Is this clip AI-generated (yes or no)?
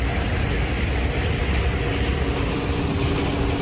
no